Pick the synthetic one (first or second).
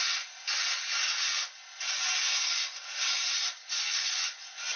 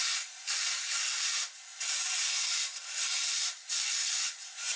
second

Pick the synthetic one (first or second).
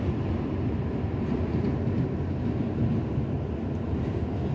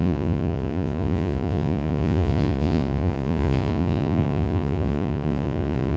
second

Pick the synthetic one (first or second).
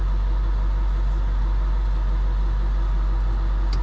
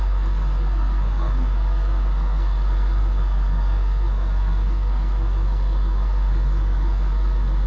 second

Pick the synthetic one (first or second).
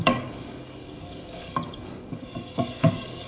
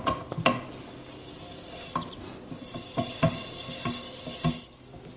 first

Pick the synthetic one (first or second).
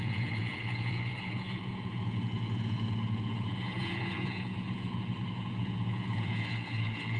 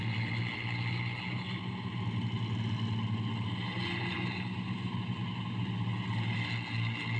first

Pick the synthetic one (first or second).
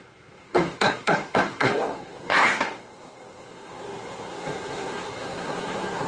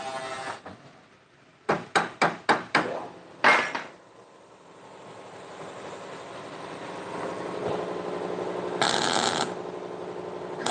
first